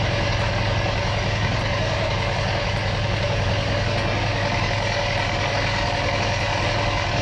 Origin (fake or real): fake